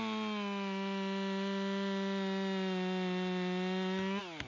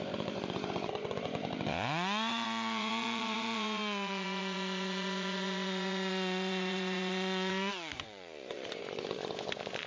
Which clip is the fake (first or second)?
second